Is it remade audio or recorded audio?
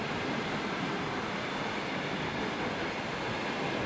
recorded